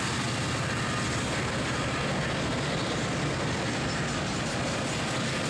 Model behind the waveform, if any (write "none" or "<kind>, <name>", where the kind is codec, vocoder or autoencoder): none